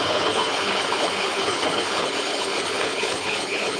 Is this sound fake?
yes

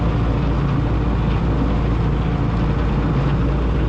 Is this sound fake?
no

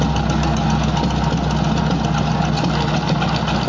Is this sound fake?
no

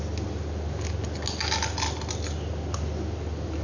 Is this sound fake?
no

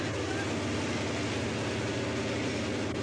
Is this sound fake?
no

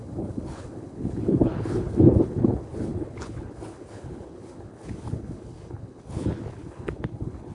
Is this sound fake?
yes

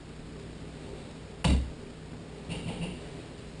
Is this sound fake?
no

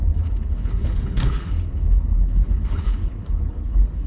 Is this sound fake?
yes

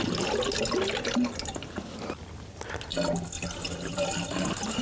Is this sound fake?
no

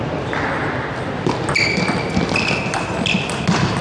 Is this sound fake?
no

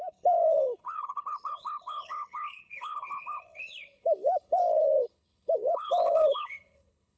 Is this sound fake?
yes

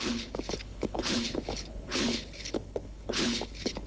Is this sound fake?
yes